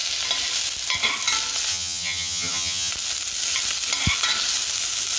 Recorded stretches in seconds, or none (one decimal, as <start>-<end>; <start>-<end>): 0.0-1.7; 2.9-5.2